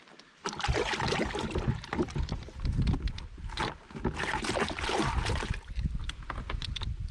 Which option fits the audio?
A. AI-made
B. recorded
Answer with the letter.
B